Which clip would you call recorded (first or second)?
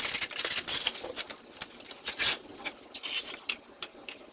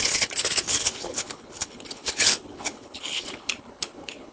first